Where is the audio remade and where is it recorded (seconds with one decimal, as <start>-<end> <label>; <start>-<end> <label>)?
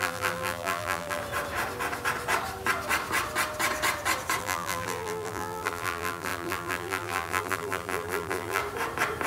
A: 0.0-1.2 remade; 1.2-4.4 recorded; 4.4-8.6 remade; 8.6-9.3 recorded